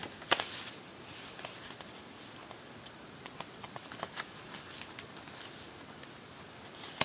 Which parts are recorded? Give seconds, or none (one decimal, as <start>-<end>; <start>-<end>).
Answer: 0.0-3.2; 3.8-7.0